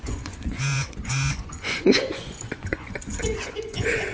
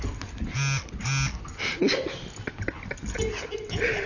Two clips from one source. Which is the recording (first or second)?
second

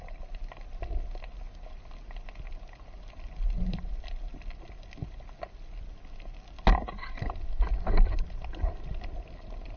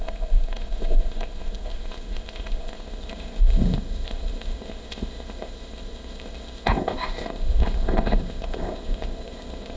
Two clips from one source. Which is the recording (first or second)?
first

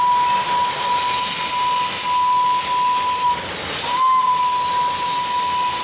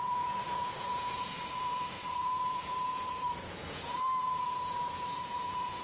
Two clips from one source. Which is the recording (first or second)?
first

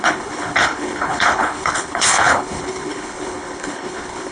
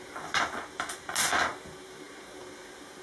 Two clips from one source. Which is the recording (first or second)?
second